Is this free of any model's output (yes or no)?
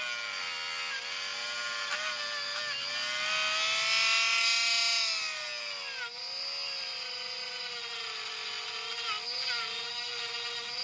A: yes